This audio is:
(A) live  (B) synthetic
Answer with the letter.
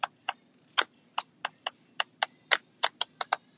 A